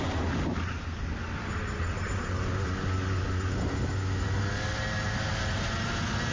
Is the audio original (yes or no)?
yes